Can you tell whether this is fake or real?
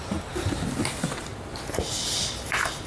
real